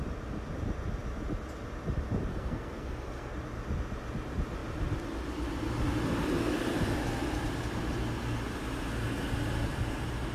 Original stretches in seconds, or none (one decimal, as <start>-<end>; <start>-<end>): 0.0-2.3; 3.3-10.3

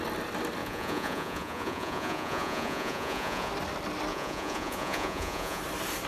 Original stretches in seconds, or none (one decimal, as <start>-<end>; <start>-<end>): 0.0-0.6; 3.5-4.1; 5.6-6.1

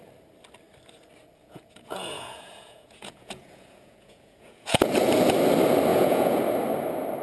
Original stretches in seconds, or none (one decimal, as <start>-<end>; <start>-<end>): 0.0-1.4; 4.9-5.9; 6.4-7.2

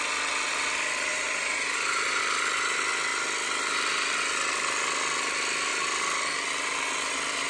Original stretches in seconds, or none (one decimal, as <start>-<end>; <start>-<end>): 0.0-1.1; 2.2-7.5

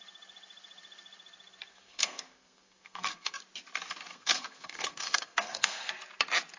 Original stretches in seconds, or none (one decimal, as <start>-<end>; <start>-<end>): 0.0-1.7; 3.4-4.1; 5.9-6.6